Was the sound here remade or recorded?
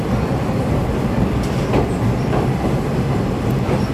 recorded